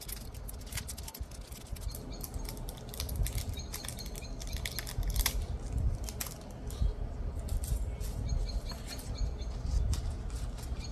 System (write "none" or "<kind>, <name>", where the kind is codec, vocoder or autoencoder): none